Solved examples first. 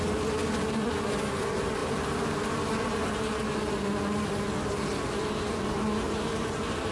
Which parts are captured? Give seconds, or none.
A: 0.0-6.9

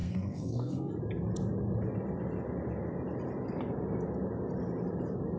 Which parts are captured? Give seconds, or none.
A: 0.9-5.4

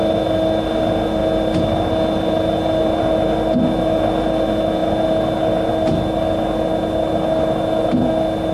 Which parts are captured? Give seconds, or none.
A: 0.0-8.5

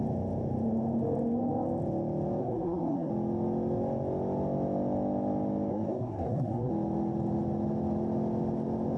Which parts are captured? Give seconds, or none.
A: 0.0-2.4; 3.1-5.7; 6.7-9.0

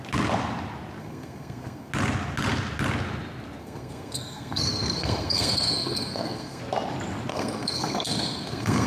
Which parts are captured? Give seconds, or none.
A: 0.0-1.0; 1.9-3.6; 6.6-7.3

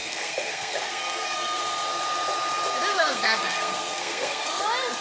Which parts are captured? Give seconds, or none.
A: 1.6-2.9; 4.6-5.0

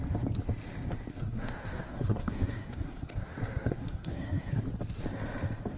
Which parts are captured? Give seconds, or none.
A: 0.0-1.1; 4.6-5.8

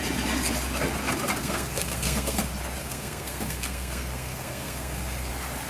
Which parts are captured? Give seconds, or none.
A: 0.0-1.4; 2.4-2.8; 5.3-5.7